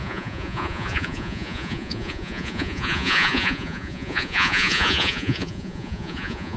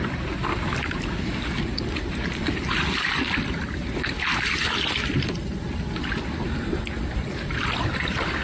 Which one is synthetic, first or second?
first